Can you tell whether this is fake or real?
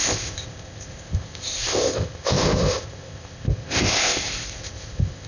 fake